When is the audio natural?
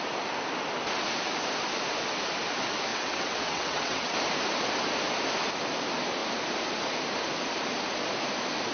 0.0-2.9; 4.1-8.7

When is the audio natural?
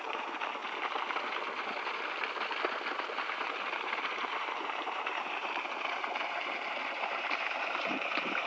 0.6-2.9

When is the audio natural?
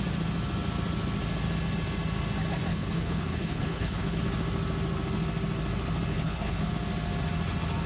0.0-2.7; 4.2-6.1; 6.7-7.9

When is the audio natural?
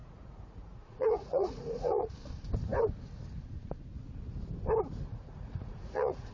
2.1-5.1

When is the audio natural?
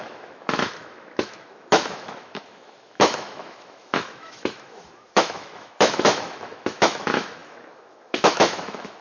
none